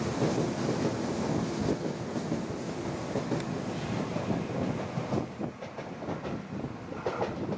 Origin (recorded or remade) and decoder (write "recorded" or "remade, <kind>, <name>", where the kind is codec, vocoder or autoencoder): recorded